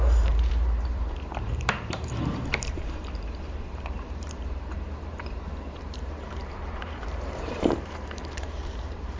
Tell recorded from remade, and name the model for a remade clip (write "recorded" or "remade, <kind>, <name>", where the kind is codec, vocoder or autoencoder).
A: remade, vocoder, BigVGAN v2